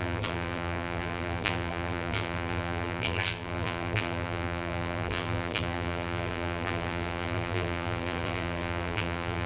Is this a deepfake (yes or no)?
yes